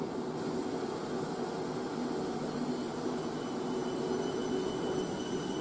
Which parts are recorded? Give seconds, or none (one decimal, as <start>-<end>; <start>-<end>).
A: 0.0-5.6